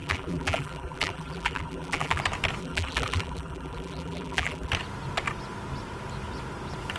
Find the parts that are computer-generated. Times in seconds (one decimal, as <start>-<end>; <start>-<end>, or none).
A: 0.0-2.2; 2.6-4.7